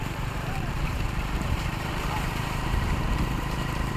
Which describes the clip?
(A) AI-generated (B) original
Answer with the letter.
A